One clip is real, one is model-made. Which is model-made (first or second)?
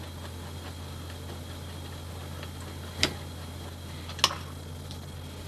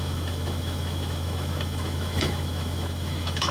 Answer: second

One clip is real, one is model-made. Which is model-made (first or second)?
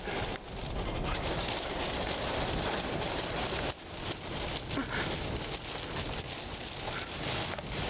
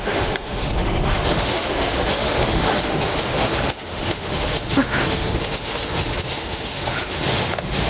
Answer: second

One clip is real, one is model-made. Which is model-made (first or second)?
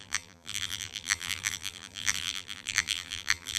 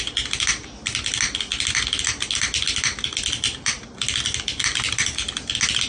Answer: first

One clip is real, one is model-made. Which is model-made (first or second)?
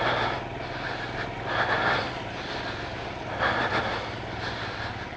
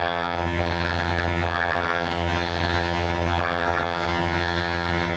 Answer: second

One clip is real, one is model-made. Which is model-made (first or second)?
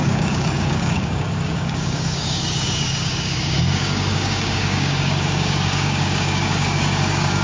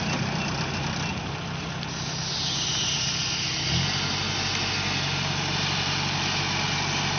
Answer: first